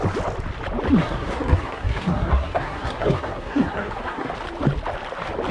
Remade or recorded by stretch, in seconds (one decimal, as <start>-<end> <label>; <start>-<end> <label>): 0.0-1.0 recorded; 1.0-4.3 remade; 4.3-5.5 recorded